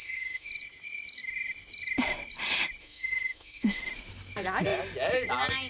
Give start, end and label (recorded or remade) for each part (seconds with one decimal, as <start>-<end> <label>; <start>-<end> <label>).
0.0-0.5 remade; 0.5-2.8 recorded; 2.8-3.8 remade; 3.8-5.7 recorded